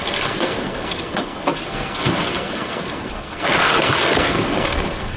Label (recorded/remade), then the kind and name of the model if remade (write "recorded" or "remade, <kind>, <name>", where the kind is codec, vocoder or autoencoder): remade, codec, SNAC